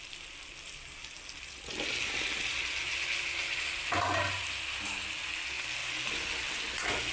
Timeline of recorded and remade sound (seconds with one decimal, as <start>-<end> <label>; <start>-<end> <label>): 0.0-7.1 recorded